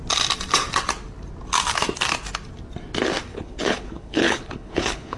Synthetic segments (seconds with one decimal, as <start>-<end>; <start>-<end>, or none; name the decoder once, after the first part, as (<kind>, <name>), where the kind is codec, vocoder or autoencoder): 3.3-5.2 (codec, HILCodec)